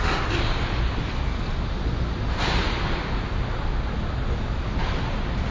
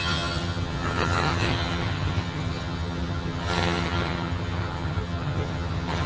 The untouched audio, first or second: first